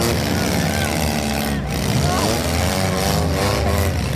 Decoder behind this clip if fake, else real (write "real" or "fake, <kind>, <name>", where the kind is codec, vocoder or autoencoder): real